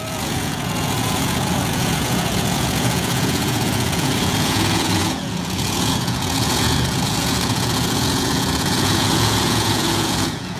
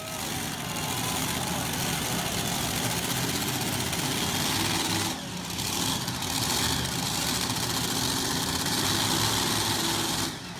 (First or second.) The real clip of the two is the second